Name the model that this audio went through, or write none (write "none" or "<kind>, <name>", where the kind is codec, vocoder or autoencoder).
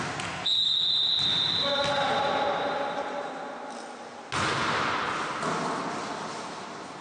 none